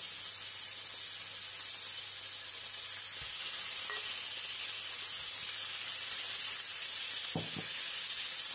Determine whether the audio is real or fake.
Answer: real